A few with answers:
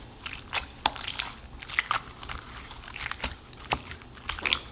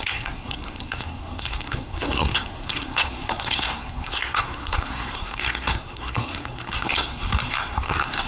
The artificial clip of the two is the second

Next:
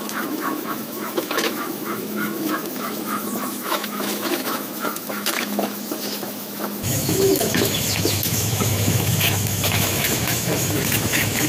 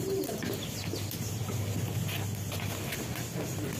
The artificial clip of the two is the first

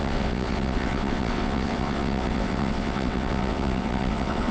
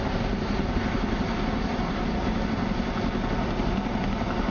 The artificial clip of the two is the first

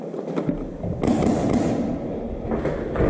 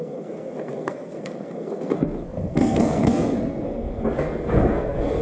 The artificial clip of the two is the second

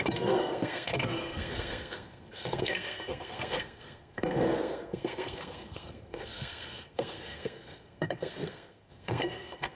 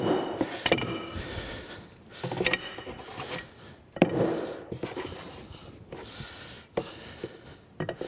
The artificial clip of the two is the first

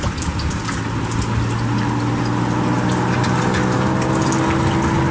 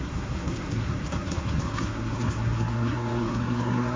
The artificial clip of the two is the second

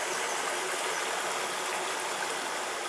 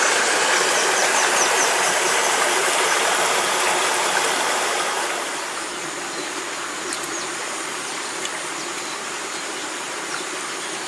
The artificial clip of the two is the second